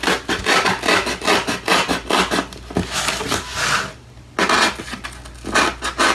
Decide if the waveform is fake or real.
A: real